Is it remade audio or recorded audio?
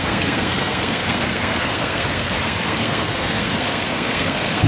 remade